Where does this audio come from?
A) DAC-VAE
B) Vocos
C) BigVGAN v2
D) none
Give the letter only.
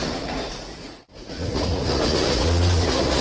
B